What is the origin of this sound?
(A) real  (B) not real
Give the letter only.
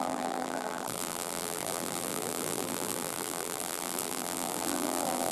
B